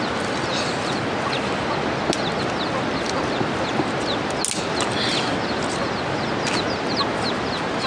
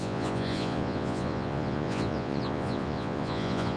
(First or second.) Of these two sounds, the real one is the first